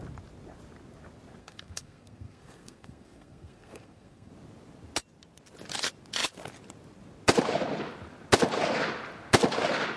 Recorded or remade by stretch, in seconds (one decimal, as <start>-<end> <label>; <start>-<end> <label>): 0.0-1.4 recorded; 1.4-4.3 remade; 4.3-10.0 recorded